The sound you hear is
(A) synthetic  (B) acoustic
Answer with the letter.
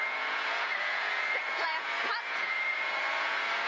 A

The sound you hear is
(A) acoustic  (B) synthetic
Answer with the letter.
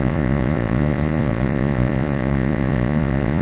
B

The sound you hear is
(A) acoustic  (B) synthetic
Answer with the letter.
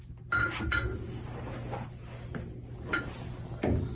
A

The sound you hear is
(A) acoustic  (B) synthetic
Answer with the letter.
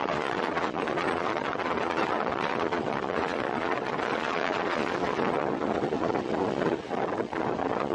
B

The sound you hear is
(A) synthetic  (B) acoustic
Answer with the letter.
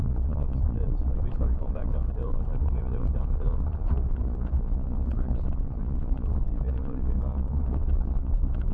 A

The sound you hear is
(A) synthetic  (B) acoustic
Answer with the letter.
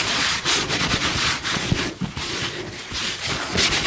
A